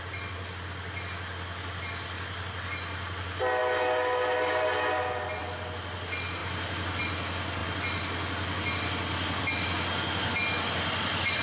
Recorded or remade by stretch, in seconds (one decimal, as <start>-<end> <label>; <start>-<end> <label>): 0.0-11.4 recorded